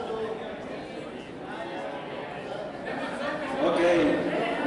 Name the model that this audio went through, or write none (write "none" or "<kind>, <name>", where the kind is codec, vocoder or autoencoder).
none